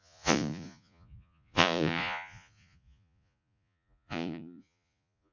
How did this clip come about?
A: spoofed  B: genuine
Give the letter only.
A